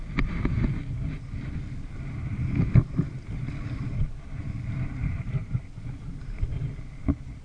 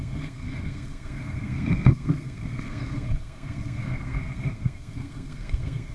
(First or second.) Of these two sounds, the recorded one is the first